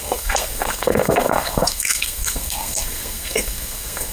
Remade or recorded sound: remade